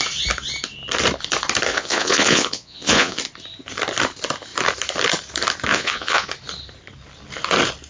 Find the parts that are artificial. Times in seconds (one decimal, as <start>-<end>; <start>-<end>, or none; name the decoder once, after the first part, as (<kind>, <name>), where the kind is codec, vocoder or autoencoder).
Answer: 1.7-3.2 (vocoder, Vocos); 5.7-6.3